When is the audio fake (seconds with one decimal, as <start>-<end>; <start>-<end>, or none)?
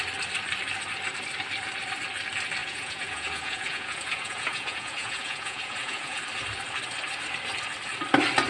2.6-6.2